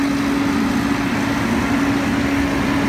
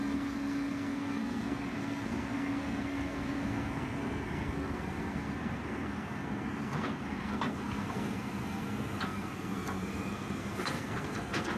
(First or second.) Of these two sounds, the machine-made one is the second